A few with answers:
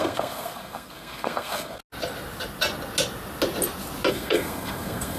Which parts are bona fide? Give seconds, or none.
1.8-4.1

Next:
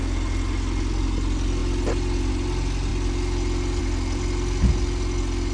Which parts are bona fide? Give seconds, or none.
0.0-5.5

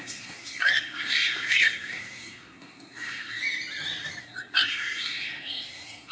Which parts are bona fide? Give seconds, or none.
3.4-4.2

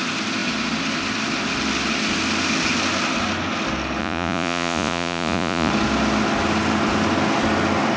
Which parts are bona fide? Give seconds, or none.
0.0-4.0; 5.7-8.0

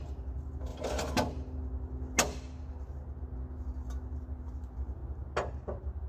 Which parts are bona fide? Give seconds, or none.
0.0-6.1